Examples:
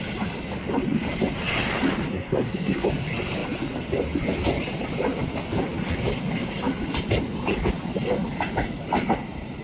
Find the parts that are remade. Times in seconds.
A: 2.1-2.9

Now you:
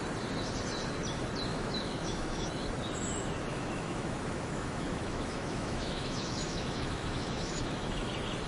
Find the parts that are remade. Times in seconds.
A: 1.5-2.5; 3.5-8.1

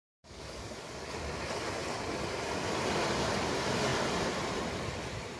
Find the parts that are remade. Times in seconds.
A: 0.0-1.2